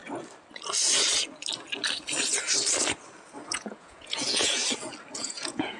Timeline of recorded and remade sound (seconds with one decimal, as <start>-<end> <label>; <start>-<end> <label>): 0.0-3.5 recorded; 3.5-4.6 remade; 4.6-5.2 recorded; 5.2-5.8 remade